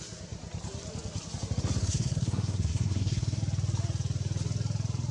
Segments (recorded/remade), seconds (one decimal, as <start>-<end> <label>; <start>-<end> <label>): 0.0-1.8 recorded; 1.8-3.4 remade; 3.4-5.1 recorded